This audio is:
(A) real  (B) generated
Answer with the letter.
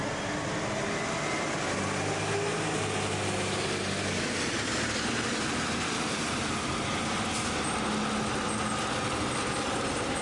A